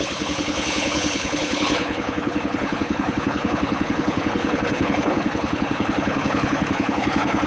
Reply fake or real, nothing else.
fake